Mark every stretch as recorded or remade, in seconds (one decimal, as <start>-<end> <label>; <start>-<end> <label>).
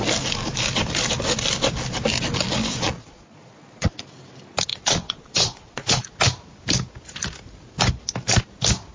0.0-2.6 recorded; 2.6-4.0 remade; 4.0-4.7 recorded; 4.7-6.2 remade; 6.2-8.9 recorded